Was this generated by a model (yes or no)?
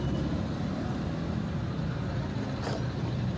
no